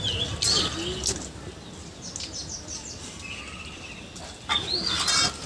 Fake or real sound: real